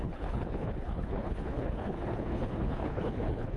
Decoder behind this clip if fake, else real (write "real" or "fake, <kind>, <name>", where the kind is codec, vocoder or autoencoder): fake, codec, HILCodec